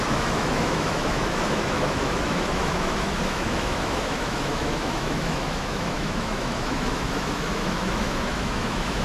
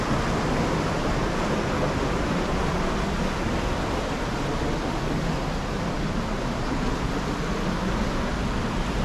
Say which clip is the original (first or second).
second